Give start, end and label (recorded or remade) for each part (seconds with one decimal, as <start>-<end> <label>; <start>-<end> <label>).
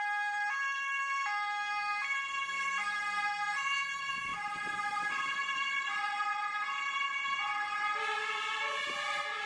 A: 0.0-4.3 recorded; 4.3-6.0 remade; 6.0-8.2 recorded; 8.2-8.8 remade; 8.8-9.5 recorded